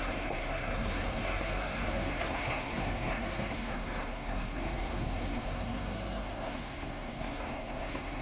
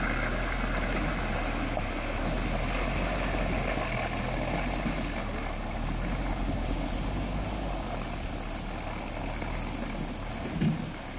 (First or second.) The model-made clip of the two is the first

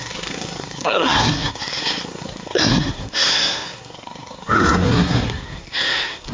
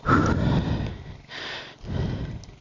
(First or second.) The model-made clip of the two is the first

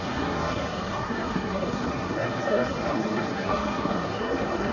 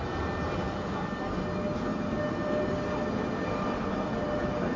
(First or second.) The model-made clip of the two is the first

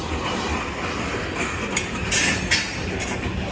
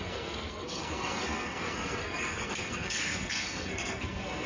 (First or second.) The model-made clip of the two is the second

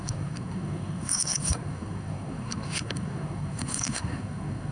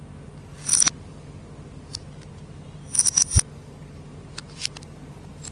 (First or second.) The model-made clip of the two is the first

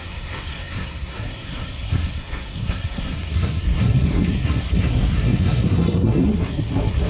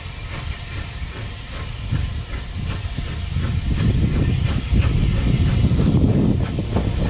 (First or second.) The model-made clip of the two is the first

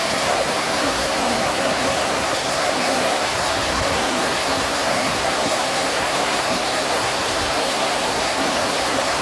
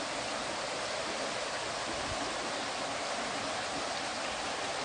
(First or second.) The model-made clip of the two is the first